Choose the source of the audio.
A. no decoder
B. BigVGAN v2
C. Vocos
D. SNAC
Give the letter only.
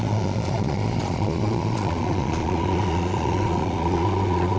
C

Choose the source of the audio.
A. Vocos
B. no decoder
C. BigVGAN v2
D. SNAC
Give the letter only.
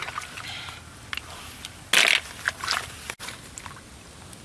B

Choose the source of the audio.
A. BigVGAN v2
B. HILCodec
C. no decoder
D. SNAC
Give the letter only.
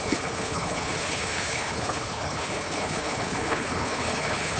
B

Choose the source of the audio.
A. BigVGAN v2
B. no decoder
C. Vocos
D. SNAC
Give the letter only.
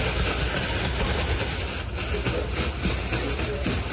B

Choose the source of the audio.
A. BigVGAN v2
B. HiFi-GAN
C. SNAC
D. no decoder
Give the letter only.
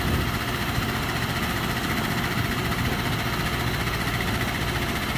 D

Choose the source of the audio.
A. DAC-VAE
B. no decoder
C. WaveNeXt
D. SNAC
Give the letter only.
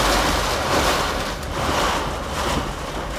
B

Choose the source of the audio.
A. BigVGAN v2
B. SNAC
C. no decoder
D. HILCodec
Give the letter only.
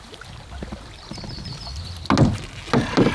C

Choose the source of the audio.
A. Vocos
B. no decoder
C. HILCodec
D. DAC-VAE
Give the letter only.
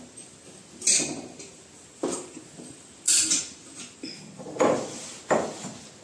B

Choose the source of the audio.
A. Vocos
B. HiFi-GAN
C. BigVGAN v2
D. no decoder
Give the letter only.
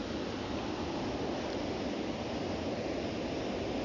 D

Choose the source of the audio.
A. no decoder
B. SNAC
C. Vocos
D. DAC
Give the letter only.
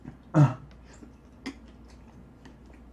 A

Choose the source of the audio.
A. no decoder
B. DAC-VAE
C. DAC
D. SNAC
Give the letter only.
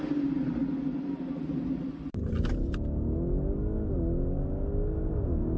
A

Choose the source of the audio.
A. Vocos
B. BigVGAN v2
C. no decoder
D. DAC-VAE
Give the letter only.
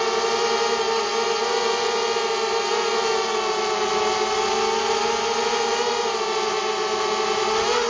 C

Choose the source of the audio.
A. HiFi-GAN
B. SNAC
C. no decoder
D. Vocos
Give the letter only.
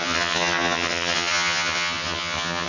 A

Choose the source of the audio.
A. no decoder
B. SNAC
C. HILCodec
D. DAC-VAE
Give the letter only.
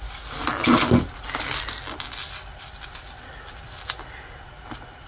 A